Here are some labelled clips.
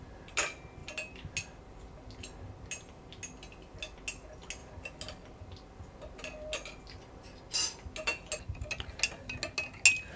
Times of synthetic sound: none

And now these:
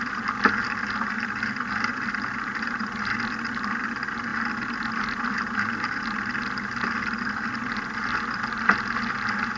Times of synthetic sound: none

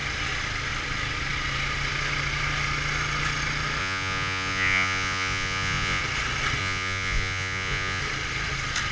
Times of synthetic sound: 3.8-6.0 (vocoder, Vocos); 6.6-8.0

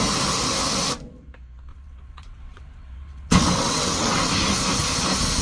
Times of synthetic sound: 1.7-4.3 (vocoder, WaveNeXt)